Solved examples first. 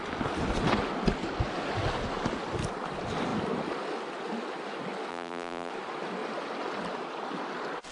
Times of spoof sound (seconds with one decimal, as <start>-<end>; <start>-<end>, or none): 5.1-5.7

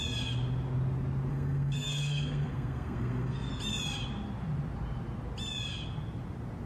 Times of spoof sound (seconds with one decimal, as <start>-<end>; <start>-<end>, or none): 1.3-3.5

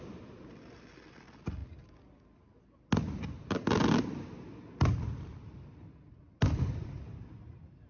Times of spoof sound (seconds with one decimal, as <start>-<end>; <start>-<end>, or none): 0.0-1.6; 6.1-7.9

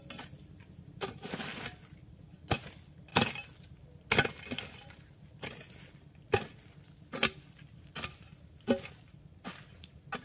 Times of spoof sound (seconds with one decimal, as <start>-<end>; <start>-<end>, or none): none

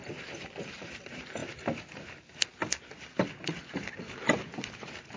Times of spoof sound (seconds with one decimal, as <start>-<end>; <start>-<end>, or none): 0.0-0.8

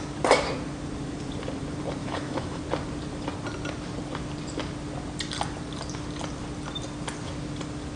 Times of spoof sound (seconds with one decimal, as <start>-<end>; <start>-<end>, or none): 2.0-2.6

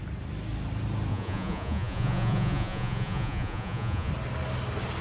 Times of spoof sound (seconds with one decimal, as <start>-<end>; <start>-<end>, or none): 1.1-4.1